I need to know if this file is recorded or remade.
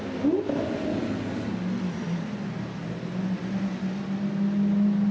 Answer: recorded